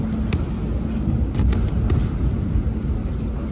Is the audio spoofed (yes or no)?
no